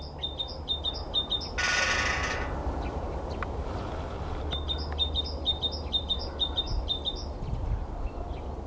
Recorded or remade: recorded